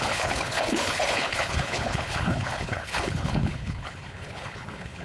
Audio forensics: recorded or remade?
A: remade